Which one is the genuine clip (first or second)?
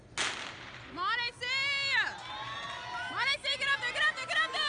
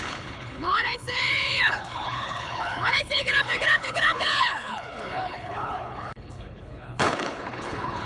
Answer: first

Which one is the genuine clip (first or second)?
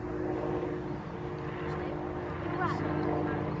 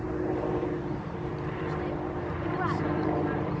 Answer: first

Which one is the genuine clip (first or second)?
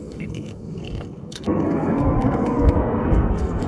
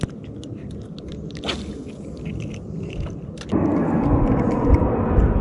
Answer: second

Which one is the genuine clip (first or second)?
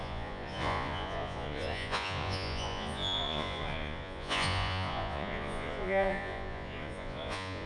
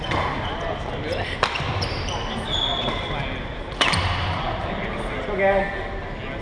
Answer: second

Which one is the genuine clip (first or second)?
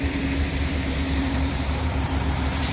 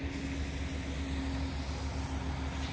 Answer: second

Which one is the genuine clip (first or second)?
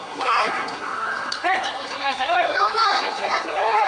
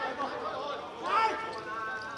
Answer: second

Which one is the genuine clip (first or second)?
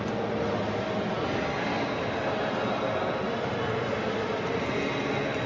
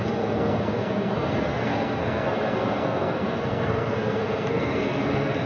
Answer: first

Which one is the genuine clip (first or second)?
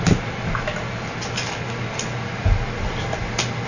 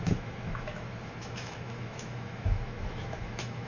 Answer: first